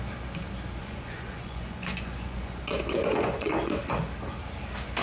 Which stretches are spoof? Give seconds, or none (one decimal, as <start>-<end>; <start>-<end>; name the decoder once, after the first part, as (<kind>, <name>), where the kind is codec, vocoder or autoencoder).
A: 0.8-3.8 (vocoder, Vocos)